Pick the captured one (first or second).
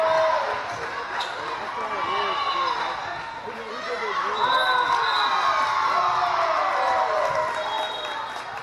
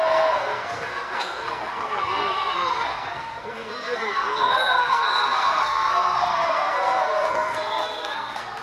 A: first